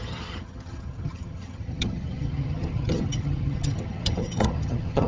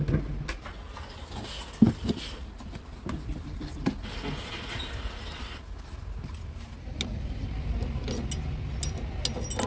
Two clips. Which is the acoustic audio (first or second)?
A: second